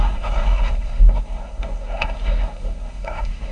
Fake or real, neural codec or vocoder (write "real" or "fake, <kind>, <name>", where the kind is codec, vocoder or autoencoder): fake, codec, SNAC